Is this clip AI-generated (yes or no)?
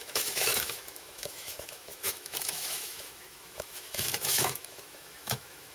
yes